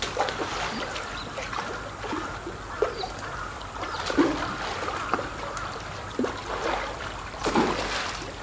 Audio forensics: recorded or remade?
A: recorded